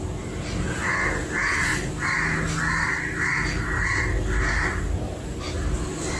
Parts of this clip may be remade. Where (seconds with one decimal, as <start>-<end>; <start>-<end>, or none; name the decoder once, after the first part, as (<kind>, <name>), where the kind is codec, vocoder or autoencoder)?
none